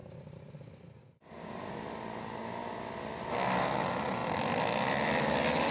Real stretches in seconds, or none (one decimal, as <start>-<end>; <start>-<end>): 0.0-5.7

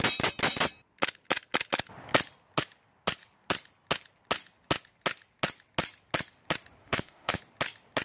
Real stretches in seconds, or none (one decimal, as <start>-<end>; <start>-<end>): 0.0-6.8; 7.4-8.0

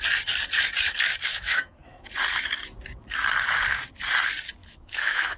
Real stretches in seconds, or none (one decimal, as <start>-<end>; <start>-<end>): 0.0-1.3; 2.1-4.6